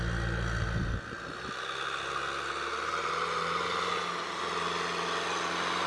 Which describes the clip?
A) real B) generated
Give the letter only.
A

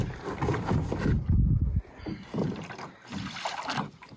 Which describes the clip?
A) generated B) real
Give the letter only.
B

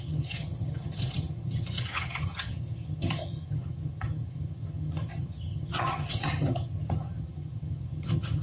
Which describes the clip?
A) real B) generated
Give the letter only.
B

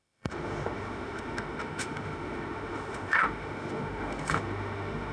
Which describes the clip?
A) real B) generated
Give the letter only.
B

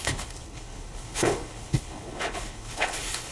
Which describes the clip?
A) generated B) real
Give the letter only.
A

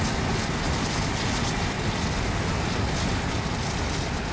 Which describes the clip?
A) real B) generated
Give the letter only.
A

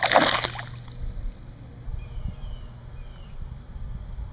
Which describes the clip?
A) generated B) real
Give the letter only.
B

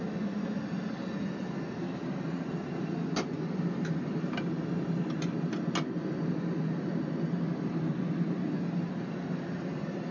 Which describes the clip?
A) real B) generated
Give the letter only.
A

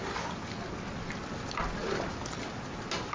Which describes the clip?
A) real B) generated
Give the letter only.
A